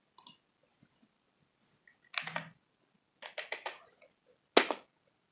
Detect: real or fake real